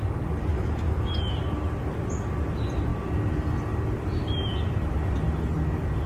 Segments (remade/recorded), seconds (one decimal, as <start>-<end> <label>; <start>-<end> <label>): 0.0-0.5 recorded; 0.5-1.1 remade; 1.1-6.1 recorded